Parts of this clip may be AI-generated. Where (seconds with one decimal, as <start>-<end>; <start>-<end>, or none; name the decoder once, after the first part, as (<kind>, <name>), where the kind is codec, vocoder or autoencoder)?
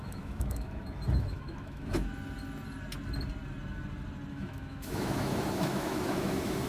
0.0-2.1 (autoencoder, DAC-VAE); 4.3-6.7